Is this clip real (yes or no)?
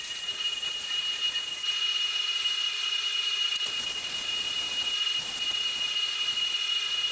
no